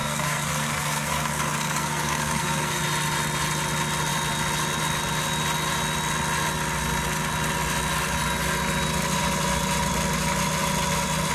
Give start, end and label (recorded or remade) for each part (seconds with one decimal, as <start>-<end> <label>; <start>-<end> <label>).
0.0-2.8 remade; 2.8-11.3 recorded